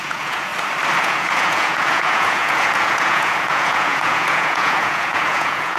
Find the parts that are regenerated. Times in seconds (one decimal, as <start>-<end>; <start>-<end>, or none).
0.0-0.5; 1.0-5.8